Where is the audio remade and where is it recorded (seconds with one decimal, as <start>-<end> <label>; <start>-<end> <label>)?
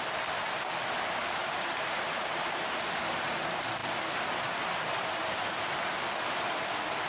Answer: 0.0-1.2 recorded; 1.2-2.7 remade; 2.7-7.1 recorded